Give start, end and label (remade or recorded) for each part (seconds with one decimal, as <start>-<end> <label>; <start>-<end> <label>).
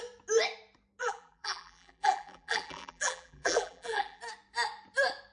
0.0-1.0 recorded; 1.0-4.2 remade; 4.2-5.3 recorded